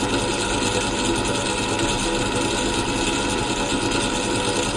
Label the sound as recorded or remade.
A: recorded